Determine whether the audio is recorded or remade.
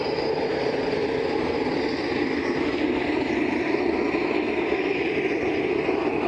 recorded